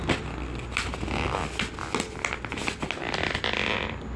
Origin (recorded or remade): recorded